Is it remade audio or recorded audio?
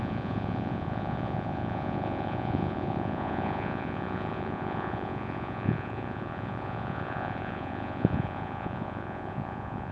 remade